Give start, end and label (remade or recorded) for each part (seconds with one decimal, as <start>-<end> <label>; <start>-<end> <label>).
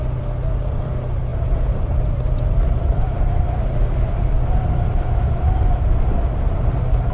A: 0.0-7.1 recorded